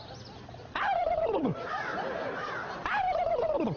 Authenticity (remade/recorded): recorded